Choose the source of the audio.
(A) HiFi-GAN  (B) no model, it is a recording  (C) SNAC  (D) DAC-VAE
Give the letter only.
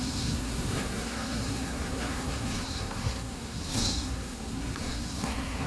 C